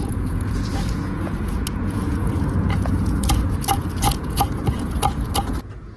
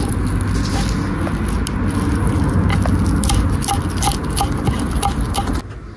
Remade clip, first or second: first